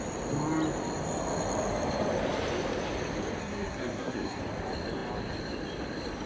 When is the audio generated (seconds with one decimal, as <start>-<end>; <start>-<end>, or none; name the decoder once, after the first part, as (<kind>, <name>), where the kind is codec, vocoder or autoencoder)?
3.4-4.4 (codec, SNAC)